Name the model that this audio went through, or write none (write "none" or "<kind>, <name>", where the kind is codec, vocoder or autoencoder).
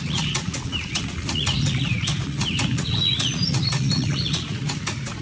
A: vocoder, Vocos